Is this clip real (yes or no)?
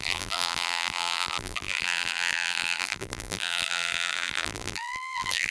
no